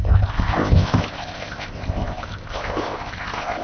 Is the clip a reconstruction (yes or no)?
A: yes